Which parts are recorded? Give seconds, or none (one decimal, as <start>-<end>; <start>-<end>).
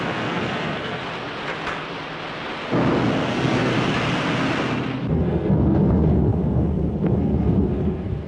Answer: 1.0-3.3; 3.7-5.1